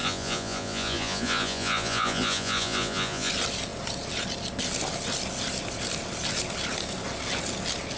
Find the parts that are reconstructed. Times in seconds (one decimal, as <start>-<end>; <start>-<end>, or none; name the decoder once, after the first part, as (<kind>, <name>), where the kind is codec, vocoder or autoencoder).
0.0-3.3 (vocoder, Vocos)